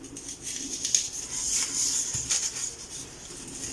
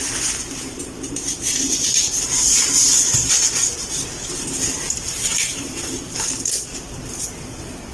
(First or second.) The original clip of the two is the first